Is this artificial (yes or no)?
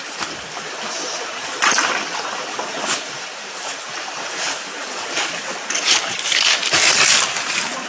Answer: no